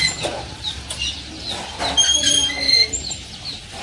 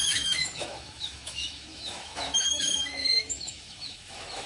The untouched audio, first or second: first